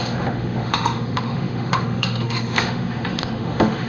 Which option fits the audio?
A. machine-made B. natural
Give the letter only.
A